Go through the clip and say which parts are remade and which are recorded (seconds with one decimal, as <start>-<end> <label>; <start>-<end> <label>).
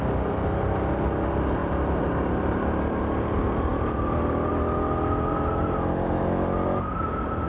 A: 0.0-7.5 recorded